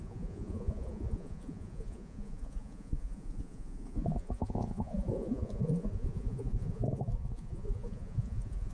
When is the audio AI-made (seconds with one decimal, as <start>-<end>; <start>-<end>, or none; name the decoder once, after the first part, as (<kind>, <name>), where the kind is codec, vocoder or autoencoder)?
0.0-8.7 (vocoder, Vocos)